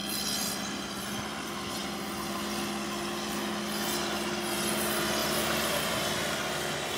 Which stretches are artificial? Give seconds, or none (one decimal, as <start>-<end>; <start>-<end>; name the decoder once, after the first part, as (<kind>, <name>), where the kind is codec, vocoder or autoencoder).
5.2-6.1 (vocoder, BigVGAN v2)